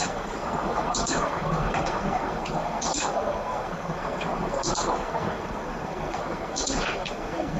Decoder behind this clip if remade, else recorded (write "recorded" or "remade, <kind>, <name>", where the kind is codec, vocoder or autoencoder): remade, codec, SNAC